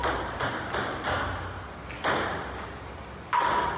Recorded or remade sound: recorded